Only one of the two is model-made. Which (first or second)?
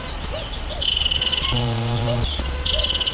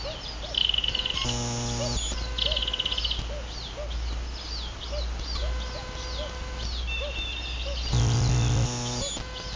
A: first